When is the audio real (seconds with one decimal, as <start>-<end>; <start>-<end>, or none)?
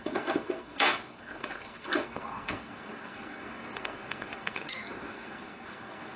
none